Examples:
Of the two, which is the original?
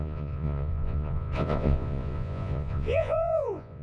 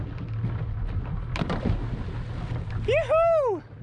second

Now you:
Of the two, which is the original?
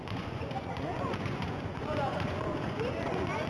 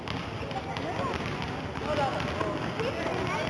second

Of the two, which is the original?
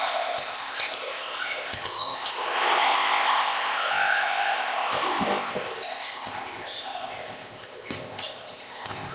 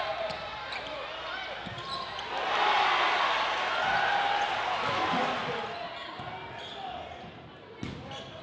second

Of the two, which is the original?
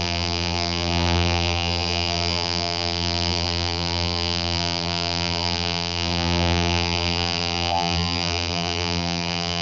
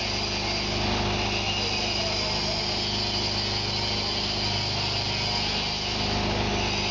second